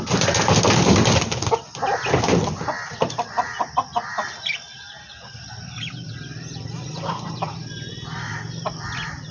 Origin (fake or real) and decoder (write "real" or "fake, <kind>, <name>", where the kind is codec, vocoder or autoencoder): real